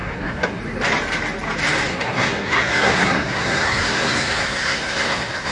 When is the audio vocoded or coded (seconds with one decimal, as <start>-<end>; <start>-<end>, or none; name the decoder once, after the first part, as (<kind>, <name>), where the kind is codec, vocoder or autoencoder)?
0.0-0.6 (codec, SNAC); 1.9-5.5

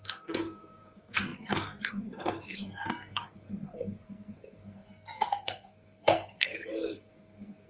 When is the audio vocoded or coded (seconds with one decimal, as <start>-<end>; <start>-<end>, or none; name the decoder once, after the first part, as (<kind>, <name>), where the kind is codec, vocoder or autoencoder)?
0.0-7.7 (codec, SNAC)

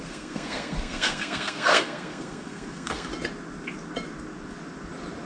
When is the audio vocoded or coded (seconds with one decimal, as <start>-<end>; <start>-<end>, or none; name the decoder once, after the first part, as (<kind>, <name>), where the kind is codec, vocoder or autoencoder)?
0.0-3.1 (codec, SNAC)